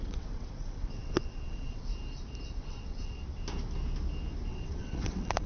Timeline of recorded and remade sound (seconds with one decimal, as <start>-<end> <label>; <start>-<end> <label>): 0.0-1.9 remade; 1.9-2.7 recorded; 2.7-3.2 remade; 3.2-4.5 recorded; 4.5-5.5 remade